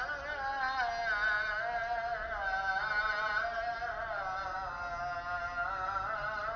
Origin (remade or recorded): recorded